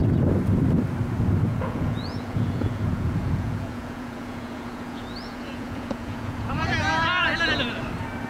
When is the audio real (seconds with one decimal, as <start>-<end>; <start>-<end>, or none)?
0.0-1.5; 6.5-8.3